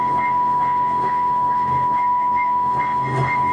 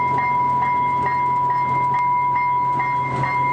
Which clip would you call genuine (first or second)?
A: second